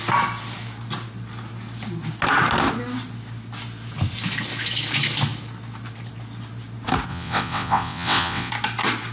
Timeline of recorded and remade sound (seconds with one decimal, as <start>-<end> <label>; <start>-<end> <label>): 0.0-7.1 recorded; 7.1-8.5 remade; 8.5-9.1 recorded